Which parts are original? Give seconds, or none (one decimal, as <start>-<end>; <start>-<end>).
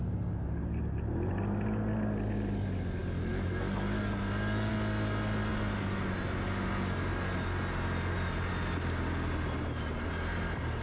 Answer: 0.0-10.8